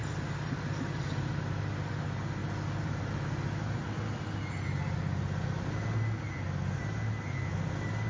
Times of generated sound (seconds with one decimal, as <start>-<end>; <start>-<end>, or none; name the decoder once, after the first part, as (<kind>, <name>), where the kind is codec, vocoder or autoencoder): none